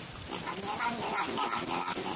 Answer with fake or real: real